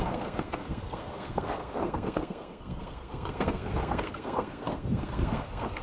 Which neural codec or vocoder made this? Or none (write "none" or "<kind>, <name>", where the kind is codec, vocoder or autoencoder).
codec, SNAC